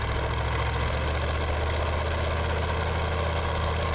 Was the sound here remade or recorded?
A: recorded